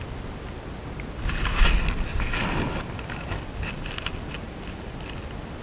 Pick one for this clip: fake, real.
real